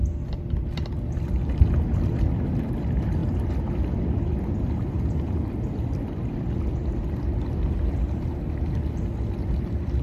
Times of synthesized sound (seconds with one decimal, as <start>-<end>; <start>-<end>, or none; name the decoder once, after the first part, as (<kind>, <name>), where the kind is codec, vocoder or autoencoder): none